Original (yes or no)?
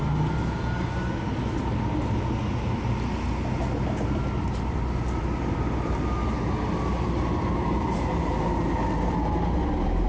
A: yes